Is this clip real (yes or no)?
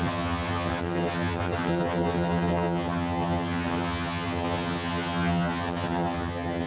no